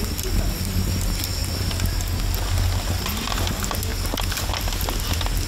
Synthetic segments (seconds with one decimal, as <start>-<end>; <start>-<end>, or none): none